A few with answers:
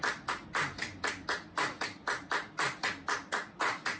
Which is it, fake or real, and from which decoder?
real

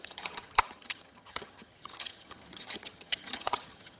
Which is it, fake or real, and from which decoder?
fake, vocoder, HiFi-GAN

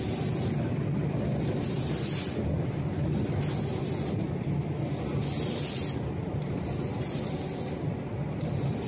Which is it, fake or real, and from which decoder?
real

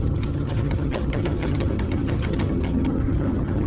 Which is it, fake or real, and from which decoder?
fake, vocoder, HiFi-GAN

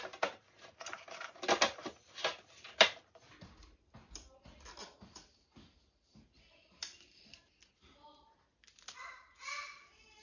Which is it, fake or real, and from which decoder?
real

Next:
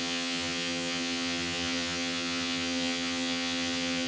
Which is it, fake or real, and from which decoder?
fake, vocoder, HiFi-GAN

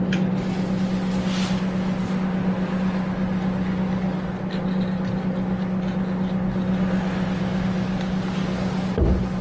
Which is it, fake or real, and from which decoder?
real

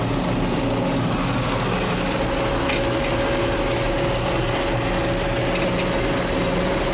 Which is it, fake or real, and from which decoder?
real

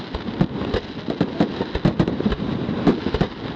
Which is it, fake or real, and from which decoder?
real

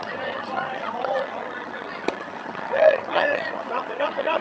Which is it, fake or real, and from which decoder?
fake, vocoder, HiFi-GAN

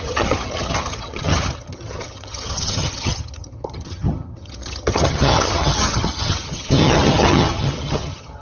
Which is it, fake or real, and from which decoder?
fake, vocoder, HiFi-GAN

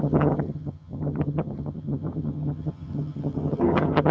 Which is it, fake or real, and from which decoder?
fake, vocoder, HiFi-GAN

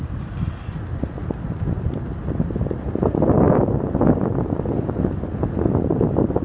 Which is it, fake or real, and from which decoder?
real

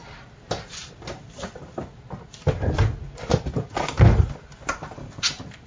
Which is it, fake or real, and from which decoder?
real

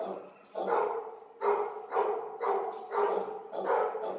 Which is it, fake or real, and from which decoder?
real